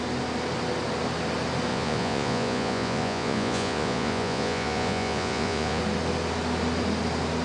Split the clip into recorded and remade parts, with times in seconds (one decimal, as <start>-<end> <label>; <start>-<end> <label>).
0.0-1.7 recorded; 1.7-5.8 remade; 5.8-7.4 recorded